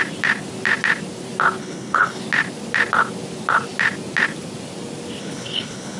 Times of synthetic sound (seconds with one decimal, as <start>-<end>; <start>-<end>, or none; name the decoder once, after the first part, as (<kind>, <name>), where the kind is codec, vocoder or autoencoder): 1.6-2.2 (codec, HILCodec); 5.2-6.0